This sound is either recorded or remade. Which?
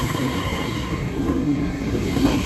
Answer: remade